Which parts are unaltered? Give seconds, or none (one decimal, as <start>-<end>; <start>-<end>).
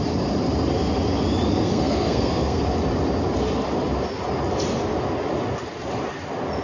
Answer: 0.0-1.6; 2.6-6.6